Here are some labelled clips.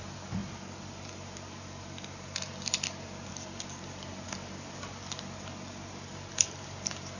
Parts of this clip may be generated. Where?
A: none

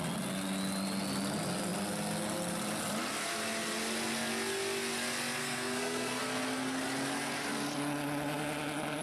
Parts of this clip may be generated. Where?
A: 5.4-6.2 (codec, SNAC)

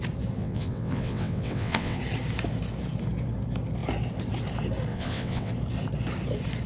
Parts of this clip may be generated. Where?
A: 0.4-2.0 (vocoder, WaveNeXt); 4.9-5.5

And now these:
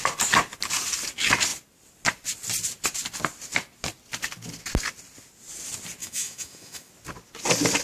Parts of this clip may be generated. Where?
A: 6.0-6.9 (autoencoder, DAC-VAE)